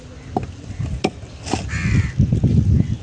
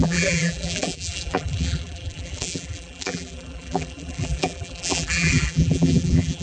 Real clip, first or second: first